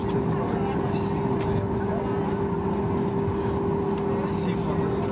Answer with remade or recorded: recorded